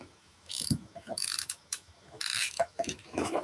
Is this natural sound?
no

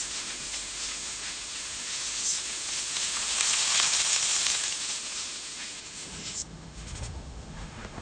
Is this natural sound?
no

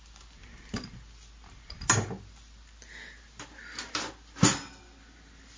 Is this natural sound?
yes